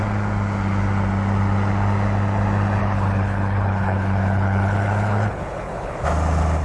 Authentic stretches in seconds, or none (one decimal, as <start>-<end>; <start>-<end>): 0.0-2.8; 6.0-6.6